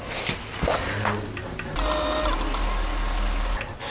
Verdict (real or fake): real